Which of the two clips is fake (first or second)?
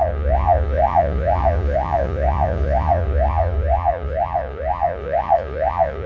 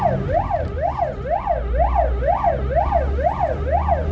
first